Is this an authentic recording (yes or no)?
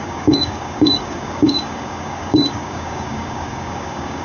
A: no